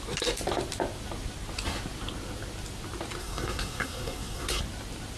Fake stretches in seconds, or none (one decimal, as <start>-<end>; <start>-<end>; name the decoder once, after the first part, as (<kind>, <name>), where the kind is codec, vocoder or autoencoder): 3.2-4.6 (codec, SNAC)